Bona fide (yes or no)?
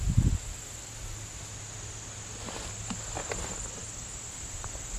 yes